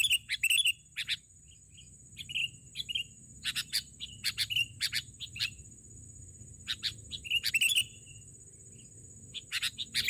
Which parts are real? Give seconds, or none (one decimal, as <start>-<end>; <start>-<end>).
0.0-10.1